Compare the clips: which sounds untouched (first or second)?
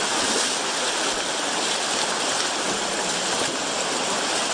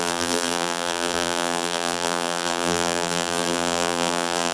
first